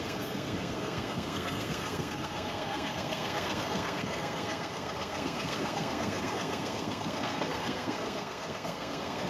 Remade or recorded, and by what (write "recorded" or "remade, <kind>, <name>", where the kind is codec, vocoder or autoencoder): remade, codec, SNAC